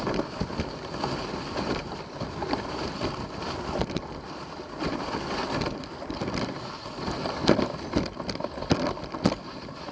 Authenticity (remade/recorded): remade